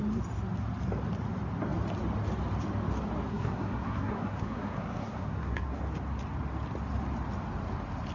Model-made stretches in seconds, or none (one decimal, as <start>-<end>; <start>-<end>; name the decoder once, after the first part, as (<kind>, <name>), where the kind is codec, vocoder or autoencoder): 3.3-5.8 (codec, SNAC)